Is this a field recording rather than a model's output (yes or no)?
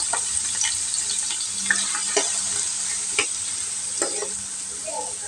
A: yes